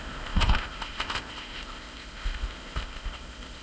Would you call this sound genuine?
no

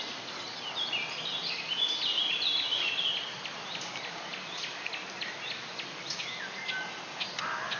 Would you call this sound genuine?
yes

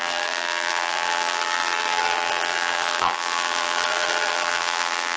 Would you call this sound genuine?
no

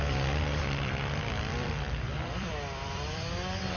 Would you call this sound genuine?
no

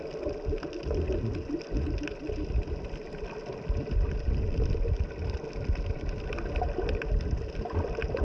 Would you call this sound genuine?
yes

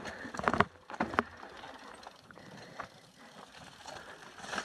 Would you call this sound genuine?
yes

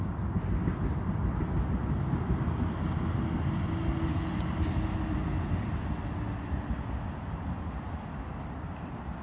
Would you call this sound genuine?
yes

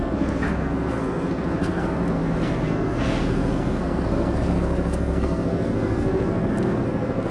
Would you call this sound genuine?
no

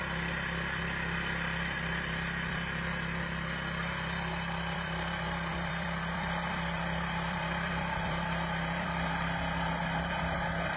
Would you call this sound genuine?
no